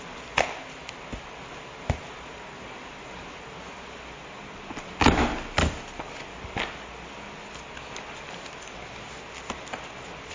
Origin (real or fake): real